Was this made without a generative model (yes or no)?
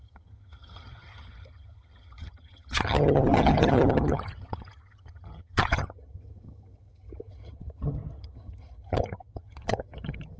no